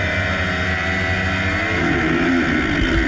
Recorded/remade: recorded